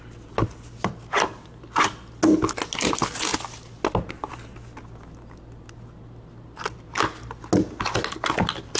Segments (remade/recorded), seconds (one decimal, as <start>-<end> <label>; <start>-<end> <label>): 0.0-8.8 recorded